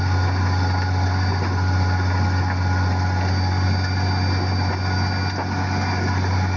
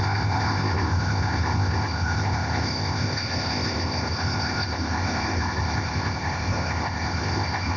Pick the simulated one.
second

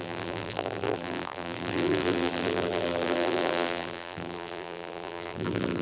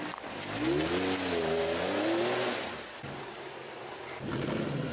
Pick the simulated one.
first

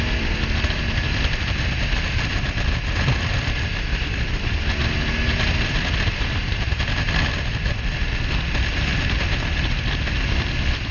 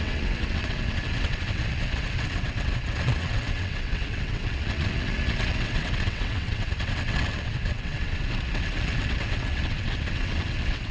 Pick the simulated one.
second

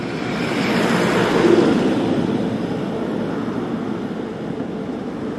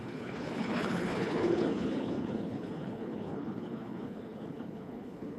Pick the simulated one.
second